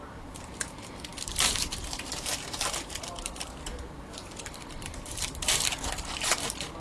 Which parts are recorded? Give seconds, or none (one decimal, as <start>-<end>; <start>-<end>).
none